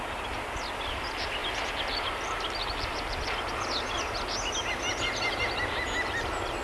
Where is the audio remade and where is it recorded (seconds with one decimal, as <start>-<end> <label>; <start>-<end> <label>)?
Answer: 0.0-6.6 recorded